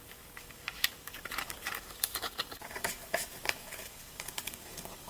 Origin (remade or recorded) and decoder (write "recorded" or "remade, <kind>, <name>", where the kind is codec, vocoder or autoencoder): remade, codec, DAC